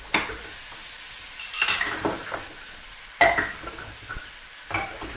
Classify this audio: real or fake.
real